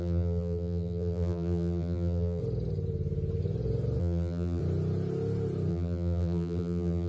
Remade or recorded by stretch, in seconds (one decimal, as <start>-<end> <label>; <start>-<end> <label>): 0.0-2.4 remade; 2.4-4.0 recorded; 4.0-4.6 remade; 4.6-5.7 recorded; 5.7-7.1 remade